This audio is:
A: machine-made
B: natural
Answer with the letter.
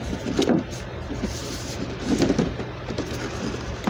B